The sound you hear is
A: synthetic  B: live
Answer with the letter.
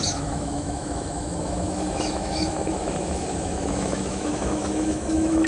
A